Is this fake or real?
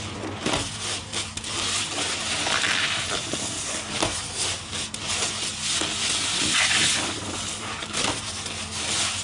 real